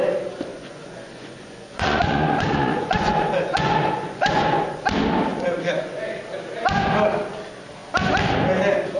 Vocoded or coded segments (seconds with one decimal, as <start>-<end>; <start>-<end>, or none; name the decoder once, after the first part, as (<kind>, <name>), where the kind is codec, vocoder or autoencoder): 0.5-4.8 (vocoder, Vocos); 5.3-6.0